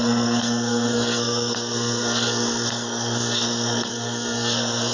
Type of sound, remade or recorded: remade